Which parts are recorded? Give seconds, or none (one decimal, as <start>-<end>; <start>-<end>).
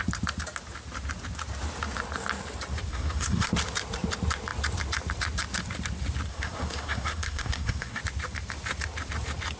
0.0-2.9; 3.5-6.3; 8.0-9.6